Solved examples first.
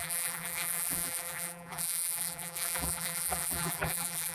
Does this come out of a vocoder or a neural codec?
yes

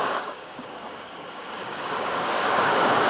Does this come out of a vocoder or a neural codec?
yes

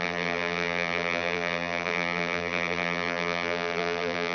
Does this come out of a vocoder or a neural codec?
yes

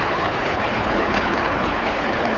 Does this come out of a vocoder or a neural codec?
yes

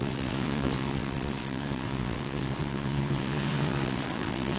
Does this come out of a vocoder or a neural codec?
yes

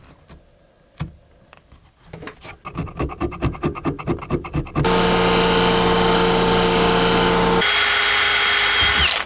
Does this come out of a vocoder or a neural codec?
no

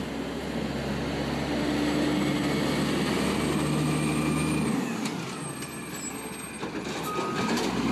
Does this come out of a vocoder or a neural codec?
no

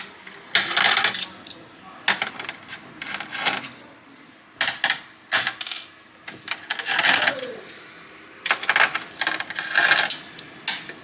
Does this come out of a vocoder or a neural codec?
no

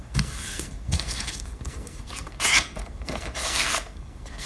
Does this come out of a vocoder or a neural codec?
yes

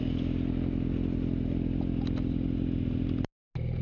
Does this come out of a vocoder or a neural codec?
no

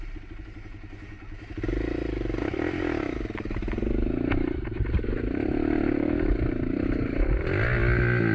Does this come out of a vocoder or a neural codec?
no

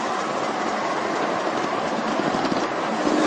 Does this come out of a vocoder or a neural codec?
no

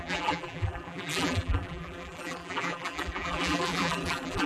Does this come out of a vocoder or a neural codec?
yes